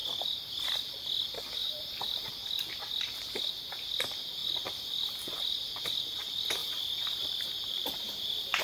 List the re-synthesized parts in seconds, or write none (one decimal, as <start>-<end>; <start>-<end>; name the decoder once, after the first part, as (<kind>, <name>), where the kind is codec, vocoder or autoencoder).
1.6-2.3 (vocoder, BigVGAN v2); 6.6-8.6